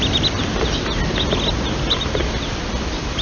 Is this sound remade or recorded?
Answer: recorded